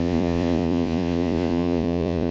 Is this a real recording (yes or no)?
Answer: no